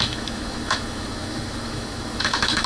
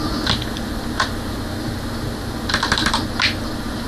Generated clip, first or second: first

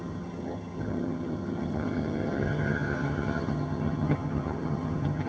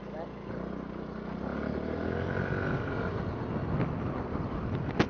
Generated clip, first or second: first